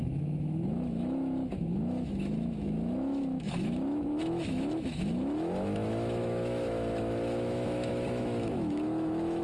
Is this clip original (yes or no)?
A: no